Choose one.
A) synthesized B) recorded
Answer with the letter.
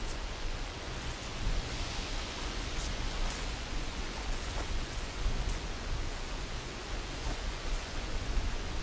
A